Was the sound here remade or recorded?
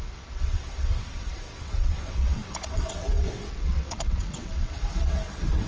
remade